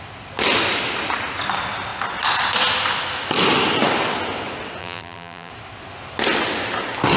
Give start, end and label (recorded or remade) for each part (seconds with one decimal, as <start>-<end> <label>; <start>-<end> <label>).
0.0-4.8 recorded; 4.8-5.5 remade; 5.5-7.2 recorded